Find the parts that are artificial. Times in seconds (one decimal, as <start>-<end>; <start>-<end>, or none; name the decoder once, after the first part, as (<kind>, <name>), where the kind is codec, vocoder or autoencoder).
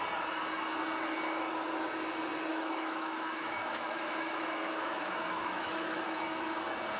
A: 2.5-6.5 (autoencoder, DAC-VAE)